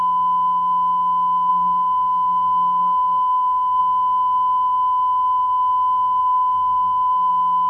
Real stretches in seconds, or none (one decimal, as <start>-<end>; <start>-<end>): 0.0-1.5; 3.8-6.2; 7.3-7.7

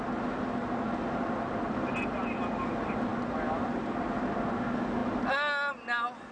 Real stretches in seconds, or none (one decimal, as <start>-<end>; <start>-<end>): 0.0-6.3

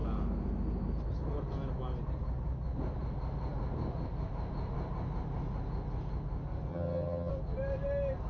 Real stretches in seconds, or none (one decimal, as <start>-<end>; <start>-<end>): 0.0-6.7; 7.3-8.3